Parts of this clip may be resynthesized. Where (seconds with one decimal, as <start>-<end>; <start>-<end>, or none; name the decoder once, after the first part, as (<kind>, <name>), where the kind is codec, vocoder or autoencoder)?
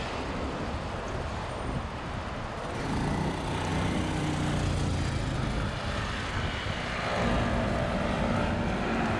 none